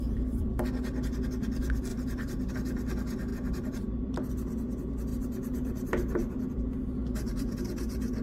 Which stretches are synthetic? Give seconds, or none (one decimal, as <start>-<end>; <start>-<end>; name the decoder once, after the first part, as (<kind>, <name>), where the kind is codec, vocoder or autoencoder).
1.9-2.5 (vocoder, BigVGAN v2); 3.3-4.3; 5.1-7.6